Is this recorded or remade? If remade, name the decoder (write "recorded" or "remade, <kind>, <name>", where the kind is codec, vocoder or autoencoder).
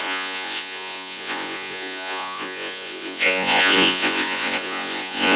remade, vocoder, Vocos